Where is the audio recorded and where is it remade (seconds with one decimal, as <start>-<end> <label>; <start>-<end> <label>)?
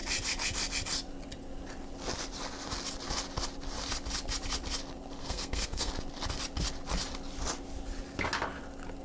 0.0-5.2 recorded; 5.2-5.9 remade; 5.9-9.0 recorded